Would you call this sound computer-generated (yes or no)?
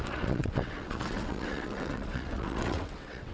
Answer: yes